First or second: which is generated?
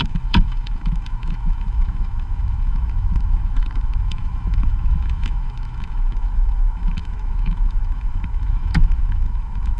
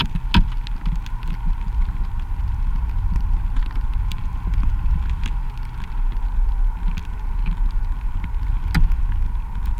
first